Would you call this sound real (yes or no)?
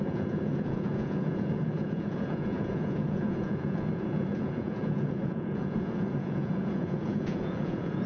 no